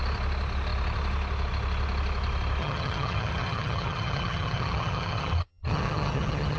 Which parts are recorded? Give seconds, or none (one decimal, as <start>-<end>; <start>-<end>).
0.0-2.6